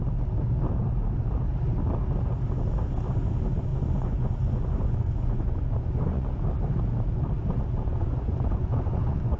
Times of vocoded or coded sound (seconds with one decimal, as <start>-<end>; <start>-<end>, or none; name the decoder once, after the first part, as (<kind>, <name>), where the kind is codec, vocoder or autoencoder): 3.7-6.3 (vocoder, Vocos); 7.9-9.4